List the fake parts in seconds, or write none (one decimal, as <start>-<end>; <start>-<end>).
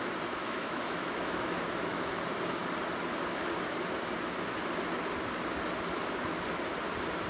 0.4-2.1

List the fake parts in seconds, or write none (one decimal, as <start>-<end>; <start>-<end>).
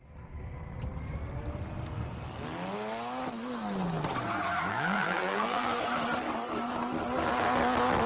4.7-5.8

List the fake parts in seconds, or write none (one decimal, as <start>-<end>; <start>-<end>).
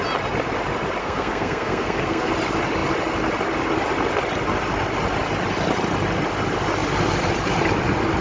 1.0-2.3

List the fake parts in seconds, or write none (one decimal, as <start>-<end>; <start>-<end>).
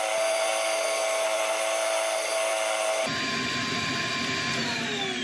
none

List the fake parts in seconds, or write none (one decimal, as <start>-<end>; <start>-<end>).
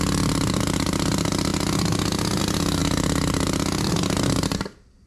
none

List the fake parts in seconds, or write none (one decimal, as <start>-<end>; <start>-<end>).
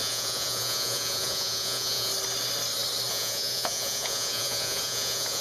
0.0-2.1; 3.1-5.4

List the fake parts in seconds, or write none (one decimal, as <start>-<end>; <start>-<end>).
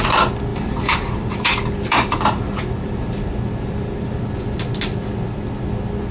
0.5-4.2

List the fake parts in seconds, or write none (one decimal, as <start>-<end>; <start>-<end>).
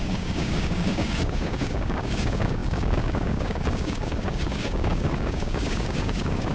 0.0-6.5